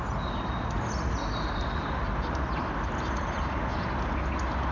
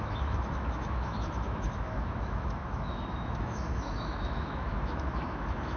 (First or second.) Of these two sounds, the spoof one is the second